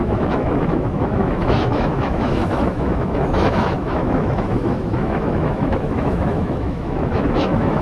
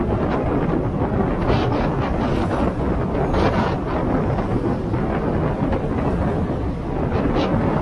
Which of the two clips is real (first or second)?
second